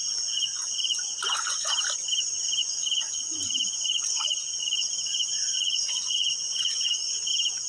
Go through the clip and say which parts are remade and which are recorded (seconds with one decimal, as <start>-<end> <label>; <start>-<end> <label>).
0.0-1.7 remade; 1.7-2.6 recorded; 2.6-7.2 remade; 7.2-7.7 recorded